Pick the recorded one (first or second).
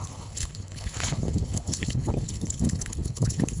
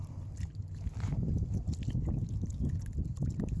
second